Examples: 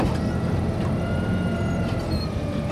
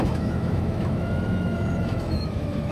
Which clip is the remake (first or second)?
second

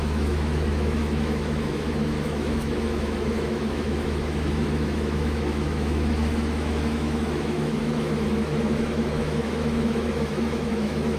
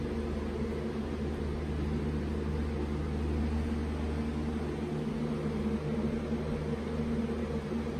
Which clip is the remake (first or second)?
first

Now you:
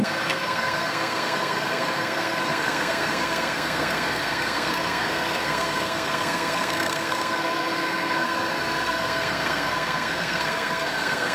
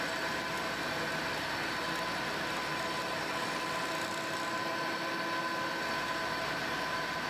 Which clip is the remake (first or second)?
first